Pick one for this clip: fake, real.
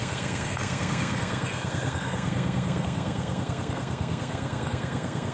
fake